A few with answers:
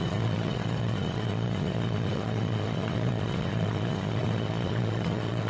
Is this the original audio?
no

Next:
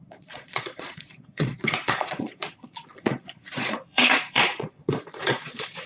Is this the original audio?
no